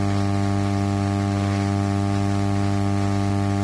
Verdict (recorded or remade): recorded